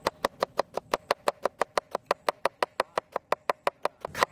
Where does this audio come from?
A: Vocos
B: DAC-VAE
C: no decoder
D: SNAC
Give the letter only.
C